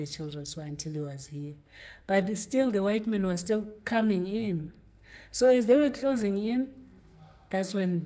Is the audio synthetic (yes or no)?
yes